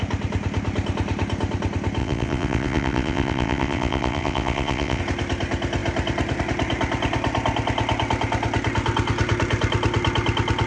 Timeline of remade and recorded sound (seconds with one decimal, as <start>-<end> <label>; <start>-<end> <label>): 0.0-2.0 recorded; 2.0-5.0 remade; 5.0-10.7 recorded